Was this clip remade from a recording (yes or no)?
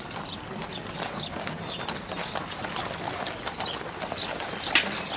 no